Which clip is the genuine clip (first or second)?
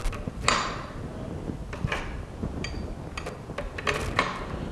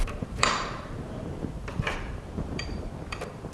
first